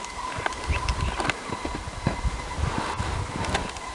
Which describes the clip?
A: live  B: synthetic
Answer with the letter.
A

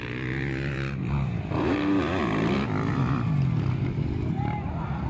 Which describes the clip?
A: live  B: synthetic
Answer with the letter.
A